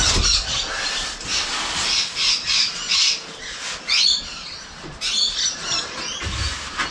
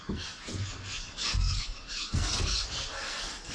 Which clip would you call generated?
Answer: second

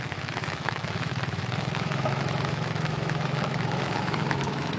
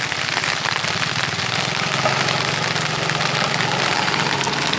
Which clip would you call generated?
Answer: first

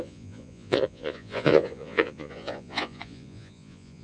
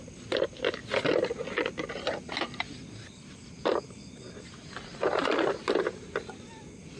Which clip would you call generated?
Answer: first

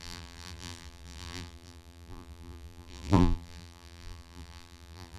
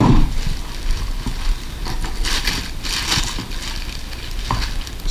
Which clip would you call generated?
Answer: first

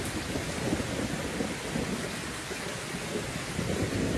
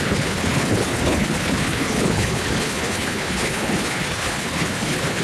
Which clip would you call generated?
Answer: second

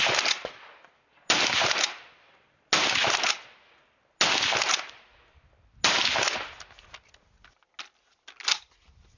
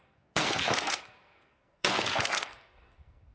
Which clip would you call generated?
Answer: second